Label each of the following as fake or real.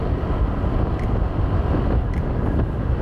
real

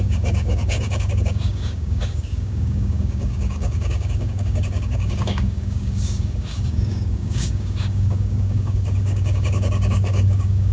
fake